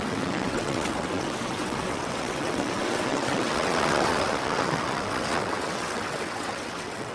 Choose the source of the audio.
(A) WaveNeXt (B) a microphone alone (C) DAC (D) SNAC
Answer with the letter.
A